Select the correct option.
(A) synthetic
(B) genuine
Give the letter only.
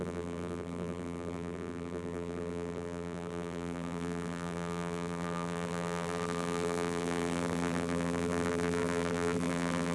A